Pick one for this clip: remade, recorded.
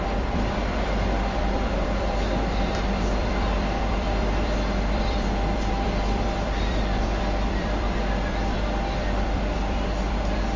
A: remade